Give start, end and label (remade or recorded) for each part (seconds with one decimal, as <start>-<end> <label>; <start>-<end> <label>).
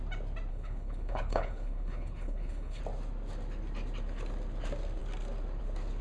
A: 0.0-0.5 recorded; 0.5-2.8 remade; 2.8-6.0 recorded